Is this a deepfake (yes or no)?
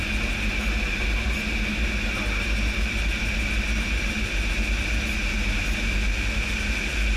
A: no